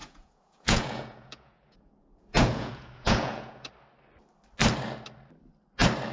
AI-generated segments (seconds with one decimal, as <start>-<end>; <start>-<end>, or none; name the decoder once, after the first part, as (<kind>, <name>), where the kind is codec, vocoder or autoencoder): 0.0-3.7 (vocoder, Vocos)